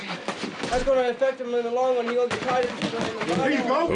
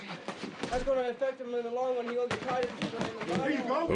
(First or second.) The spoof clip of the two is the second